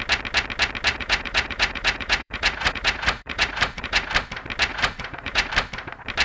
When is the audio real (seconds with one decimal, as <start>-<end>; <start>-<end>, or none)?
0.0-0.9; 4.1-4.7; 5.5-6.2